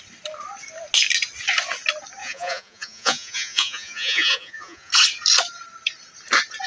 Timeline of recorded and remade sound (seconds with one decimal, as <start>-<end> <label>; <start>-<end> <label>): 0.0-2.2 recorded; 2.2-4.9 remade; 4.9-6.7 recorded

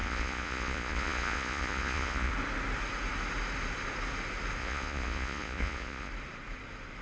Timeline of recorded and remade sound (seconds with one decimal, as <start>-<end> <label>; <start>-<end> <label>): 0.0-2.3 remade; 2.3-4.6 recorded; 4.6-6.1 remade; 6.1-7.0 recorded

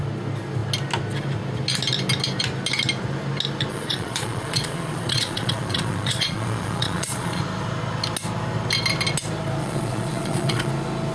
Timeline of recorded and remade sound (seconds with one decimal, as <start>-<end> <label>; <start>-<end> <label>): 0.0-3.7 recorded; 3.7-7.4 remade; 7.4-9.6 recorded; 9.6-10.7 remade; 10.7-11.1 recorded

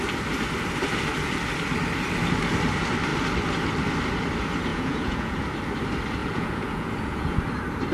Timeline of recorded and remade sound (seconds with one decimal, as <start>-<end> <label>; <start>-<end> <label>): 0.0-4.7 recorded; 4.7-5.4 remade; 5.4-6.2 recorded; 6.2-7.4 remade; 7.4-7.9 recorded

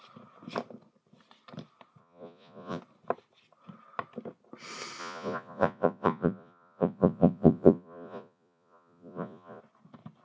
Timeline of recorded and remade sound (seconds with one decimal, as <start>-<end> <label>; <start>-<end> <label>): 0.0-2.0 recorded; 2.0-2.8 remade; 2.8-5.0 recorded; 5.0-9.6 remade; 9.6-10.2 recorded

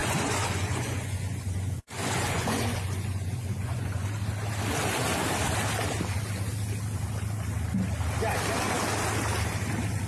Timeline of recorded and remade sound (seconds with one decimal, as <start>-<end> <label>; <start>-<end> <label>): 0.0-4.1 remade; 4.1-10.1 recorded